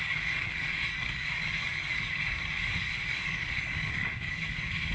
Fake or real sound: fake